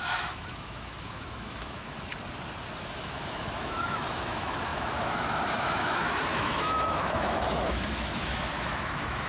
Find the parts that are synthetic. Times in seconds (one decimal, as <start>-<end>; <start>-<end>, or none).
0.0-2.1; 2.8-9.3

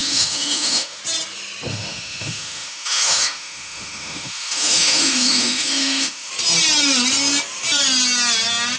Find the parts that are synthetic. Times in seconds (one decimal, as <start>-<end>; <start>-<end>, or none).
0.0-1.0; 1.7-6.3

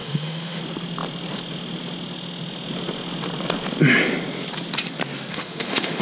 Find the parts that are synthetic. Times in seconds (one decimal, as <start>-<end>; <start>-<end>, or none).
0.0-0.6; 5.3-6.0

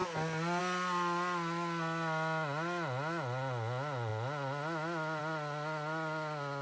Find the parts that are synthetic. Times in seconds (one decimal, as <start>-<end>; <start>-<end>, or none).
none

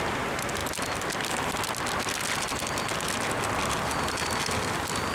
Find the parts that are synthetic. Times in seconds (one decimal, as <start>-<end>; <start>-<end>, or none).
none